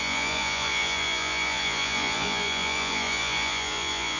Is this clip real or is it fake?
fake